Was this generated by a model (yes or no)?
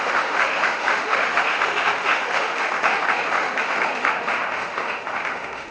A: yes